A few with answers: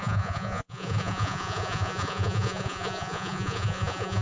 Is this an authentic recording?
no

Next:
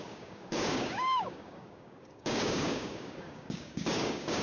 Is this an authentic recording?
no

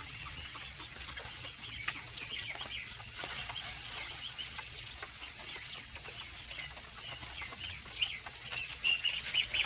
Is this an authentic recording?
no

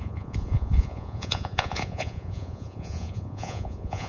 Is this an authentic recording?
no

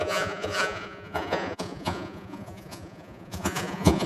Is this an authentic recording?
no